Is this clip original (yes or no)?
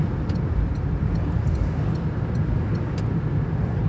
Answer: yes